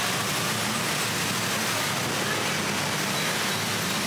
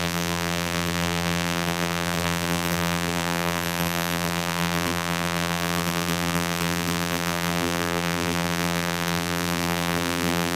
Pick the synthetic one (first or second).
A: second